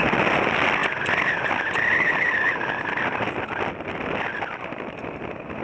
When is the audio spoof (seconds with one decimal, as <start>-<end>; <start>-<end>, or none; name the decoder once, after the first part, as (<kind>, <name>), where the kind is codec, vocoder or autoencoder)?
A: none